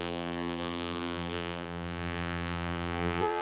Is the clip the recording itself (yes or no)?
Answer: no